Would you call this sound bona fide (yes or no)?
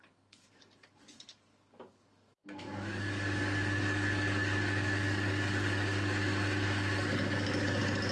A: no